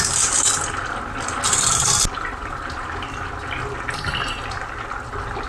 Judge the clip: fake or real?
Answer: real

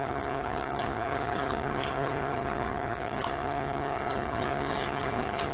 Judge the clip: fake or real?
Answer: fake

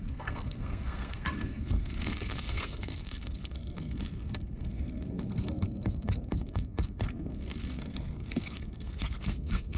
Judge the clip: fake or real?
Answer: fake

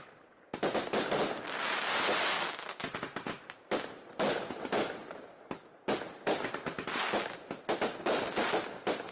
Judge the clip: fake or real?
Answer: real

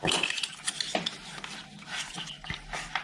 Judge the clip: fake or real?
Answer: real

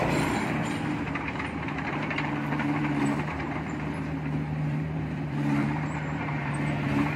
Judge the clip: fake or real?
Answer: fake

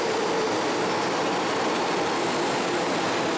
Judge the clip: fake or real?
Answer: real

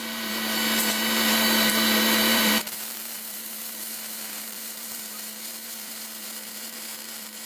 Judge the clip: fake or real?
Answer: fake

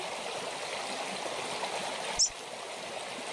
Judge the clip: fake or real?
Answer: real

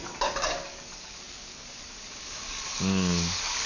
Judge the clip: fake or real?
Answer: fake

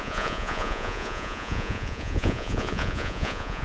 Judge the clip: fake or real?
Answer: fake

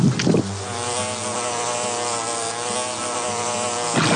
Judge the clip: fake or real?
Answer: real